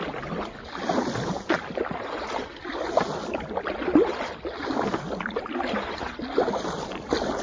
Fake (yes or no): no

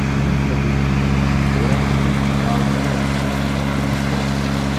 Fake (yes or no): no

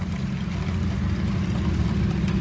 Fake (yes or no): no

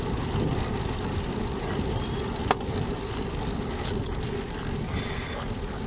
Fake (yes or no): no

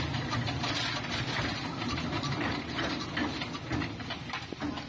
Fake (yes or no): no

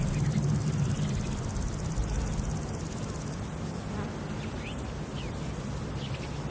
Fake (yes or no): no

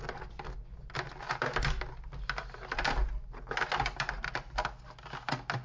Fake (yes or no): no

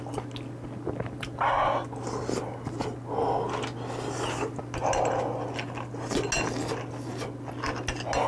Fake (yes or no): no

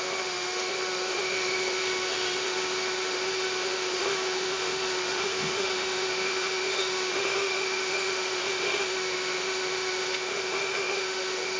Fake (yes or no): yes